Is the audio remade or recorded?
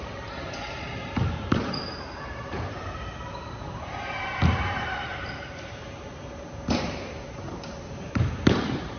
remade